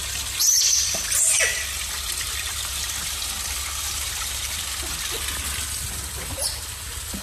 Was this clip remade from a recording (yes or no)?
no